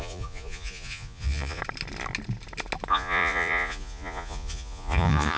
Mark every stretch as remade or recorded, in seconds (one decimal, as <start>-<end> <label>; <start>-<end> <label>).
0.0-1.6 remade; 1.6-2.9 recorded; 2.9-5.4 remade